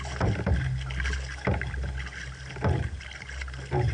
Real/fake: real